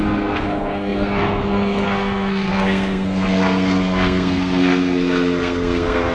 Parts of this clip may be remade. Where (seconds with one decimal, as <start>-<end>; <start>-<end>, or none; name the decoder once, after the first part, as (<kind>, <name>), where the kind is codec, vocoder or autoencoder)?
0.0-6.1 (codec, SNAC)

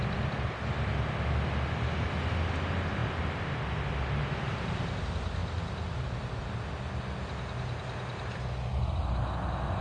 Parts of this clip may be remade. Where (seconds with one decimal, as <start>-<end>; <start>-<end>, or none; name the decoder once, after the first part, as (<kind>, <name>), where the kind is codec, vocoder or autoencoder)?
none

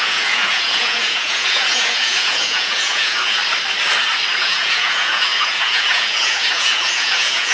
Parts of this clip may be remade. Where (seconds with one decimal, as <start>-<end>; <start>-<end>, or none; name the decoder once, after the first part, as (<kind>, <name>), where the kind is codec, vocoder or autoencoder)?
0.0-3.4 (vocoder, Vocos); 4.4-7.5

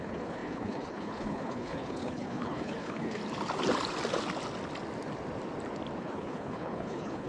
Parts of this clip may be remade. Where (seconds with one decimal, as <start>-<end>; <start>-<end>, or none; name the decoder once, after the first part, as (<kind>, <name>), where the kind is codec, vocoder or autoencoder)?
0.0-3.2 (codec, HILCodec); 6.0-7.3